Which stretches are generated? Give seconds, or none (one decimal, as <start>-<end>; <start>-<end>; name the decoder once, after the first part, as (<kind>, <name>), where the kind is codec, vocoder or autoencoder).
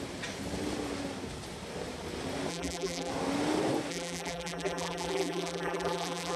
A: 2.5-3.1 (vocoder, BigVGAN v2); 3.9-6.4